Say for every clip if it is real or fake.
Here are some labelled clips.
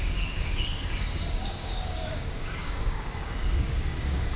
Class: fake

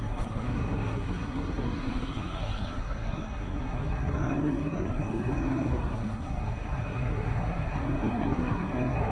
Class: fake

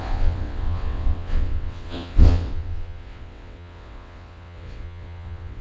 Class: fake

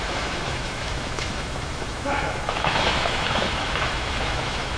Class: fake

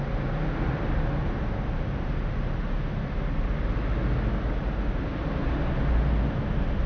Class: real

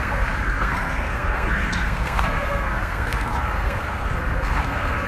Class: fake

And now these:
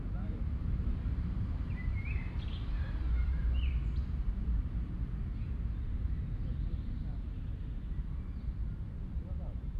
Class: fake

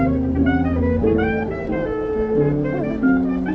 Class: real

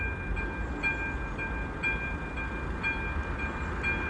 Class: real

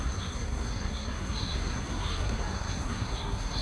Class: fake